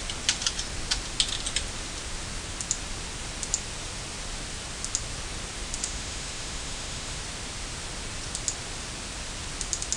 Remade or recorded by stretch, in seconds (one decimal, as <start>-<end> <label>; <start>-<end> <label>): 0.0-5.8 recorded; 5.8-7.2 remade; 7.2-10.0 recorded

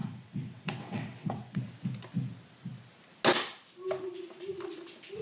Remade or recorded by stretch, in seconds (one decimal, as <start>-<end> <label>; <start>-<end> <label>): 0.0-1.6 remade; 1.6-5.2 recorded